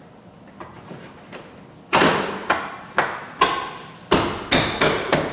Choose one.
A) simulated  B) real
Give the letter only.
B